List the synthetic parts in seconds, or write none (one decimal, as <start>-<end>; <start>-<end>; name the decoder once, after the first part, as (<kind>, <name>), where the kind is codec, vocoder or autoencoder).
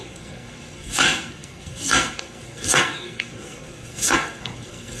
0.0-5.0 (codec, SNAC)